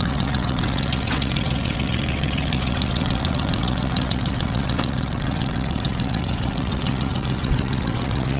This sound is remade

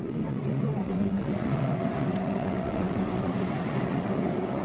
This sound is remade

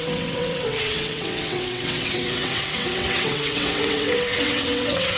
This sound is remade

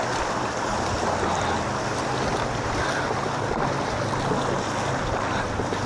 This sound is recorded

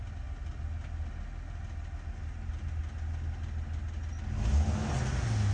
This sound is recorded